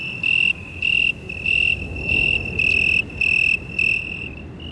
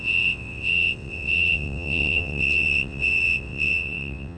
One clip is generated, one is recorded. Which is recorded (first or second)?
first